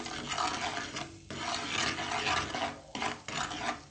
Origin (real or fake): real